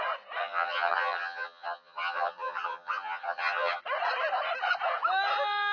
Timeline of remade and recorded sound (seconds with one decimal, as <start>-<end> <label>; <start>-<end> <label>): 0.0-0.4 recorded; 0.4-3.8 remade; 3.8-5.7 recorded